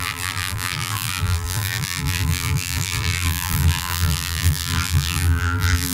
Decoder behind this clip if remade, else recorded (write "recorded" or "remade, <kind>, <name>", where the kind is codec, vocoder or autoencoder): remade, vocoder, BigVGAN v2